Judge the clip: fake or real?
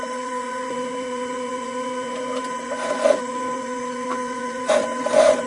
fake